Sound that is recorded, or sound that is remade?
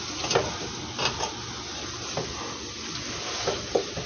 recorded